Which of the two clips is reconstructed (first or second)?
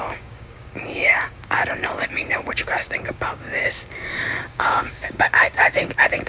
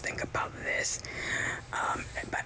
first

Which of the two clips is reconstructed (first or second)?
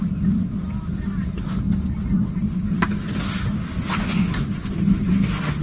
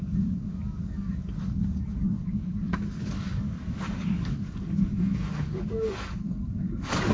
second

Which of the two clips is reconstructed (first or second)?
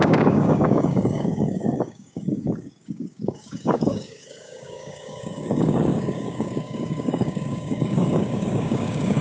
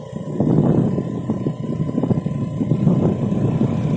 first